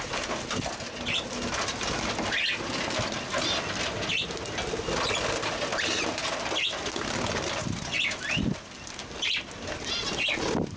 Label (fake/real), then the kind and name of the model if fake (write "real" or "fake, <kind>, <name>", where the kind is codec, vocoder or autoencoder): real